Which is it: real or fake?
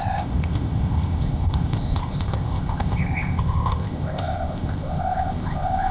fake